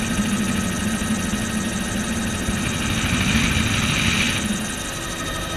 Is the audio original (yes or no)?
yes